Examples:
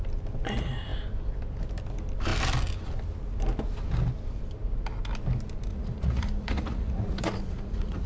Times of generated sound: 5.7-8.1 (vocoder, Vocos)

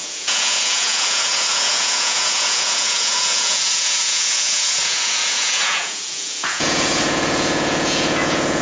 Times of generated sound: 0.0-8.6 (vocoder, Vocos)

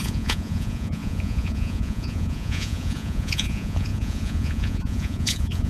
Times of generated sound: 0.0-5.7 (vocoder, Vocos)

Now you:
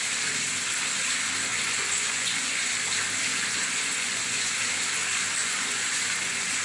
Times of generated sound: 1.5-2.7 (vocoder, Vocos); 3.3-4.5; 5.4-6.6

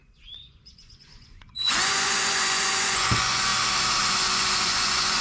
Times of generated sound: 0.0-3.5 (vocoder, Vocos); 4.1-5.2